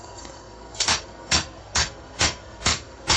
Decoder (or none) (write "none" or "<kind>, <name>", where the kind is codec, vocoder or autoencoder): codec, SNAC